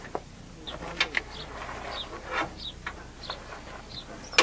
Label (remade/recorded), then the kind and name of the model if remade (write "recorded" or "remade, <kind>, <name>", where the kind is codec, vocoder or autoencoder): recorded